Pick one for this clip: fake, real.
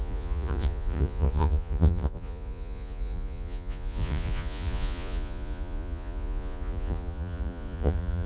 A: fake